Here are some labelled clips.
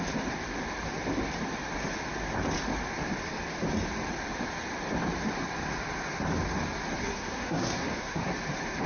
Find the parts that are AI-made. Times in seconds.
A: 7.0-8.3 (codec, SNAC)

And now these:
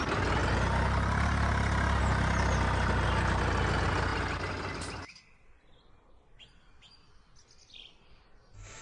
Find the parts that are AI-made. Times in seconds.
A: none

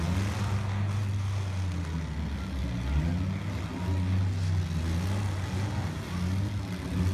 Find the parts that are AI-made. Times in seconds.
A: none

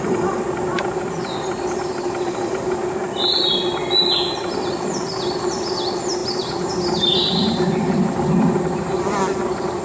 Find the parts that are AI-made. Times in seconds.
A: 0.7-3.0 (vocoder, BigVGAN v2)

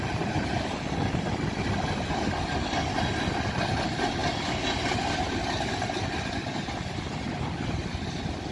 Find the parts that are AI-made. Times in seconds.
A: none

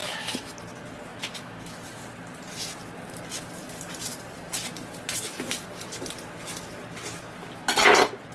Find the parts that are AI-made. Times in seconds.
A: 0.0-0.5 (autoencoder, DAC-VAE); 1.1-2.0

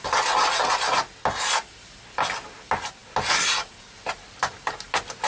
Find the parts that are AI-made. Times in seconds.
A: none

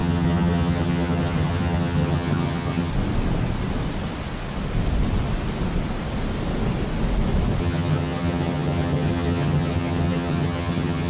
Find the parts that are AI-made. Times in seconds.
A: 0.0-2.9 (vocoder, HiFi-GAN); 7.6-11.1